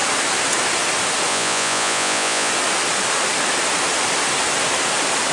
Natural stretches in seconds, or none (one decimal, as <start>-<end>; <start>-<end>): 0.0-1.3; 2.5-5.3